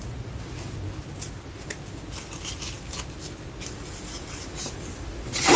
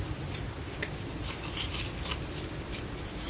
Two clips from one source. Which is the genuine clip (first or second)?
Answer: first